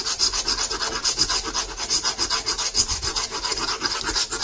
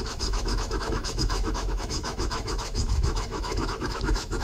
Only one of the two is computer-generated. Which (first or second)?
second